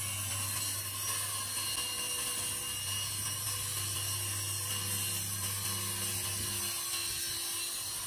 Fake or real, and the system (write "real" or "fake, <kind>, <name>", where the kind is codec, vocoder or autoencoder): real